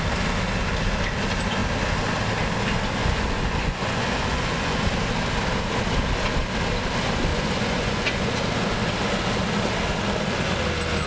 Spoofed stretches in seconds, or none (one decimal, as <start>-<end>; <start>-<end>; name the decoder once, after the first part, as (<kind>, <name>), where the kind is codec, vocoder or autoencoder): 3.0-4.8 (vocoder, Vocos); 7.3-8.3

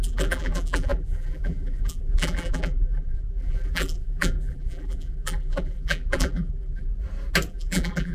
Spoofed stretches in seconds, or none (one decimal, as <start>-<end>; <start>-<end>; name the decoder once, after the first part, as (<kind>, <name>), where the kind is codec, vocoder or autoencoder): 0.0-6.9 (vocoder, BigVGAN v2); 7.5-8.1

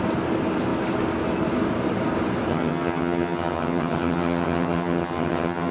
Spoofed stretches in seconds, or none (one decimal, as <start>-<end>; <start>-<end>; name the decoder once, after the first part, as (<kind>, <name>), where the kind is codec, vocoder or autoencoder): 2.5-5.7 (vocoder, HiFi-GAN)

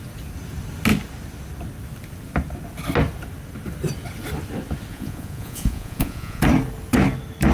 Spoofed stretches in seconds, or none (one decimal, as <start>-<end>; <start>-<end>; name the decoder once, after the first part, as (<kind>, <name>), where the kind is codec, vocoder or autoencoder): 4.9-6.4 (vocoder, Vocos)

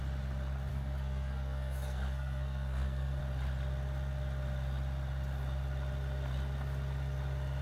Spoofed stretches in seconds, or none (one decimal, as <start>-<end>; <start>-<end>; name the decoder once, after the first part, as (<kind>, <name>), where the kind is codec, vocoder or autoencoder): 0.7-3.2 (codec, SNAC)

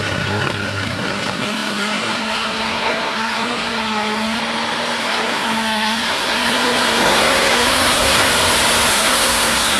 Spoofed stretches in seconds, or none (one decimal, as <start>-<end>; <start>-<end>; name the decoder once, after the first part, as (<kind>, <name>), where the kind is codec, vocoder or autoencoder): 0.0-4.4 (codec, SNAC); 5.0-8.3; 8.9-9.8

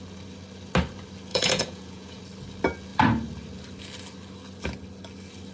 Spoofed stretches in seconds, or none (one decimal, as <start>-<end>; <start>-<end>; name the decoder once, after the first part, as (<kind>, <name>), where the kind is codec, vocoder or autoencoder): 1.3-2.2 (vocoder, Vocos)